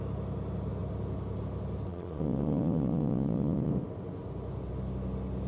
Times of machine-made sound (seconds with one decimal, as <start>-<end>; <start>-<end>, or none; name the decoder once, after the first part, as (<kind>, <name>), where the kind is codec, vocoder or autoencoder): 1.9-3.7 (vocoder, Vocos)